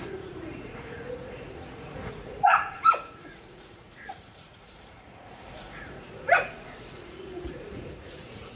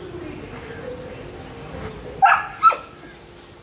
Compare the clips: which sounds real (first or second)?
second